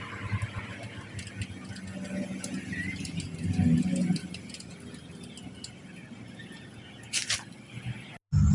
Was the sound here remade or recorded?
recorded